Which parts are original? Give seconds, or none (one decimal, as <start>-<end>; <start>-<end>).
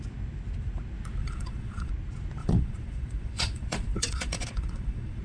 0.0-1.2; 1.9-2.4